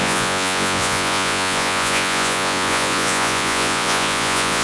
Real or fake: fake